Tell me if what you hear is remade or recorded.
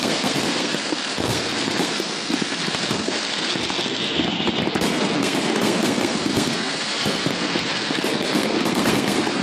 remade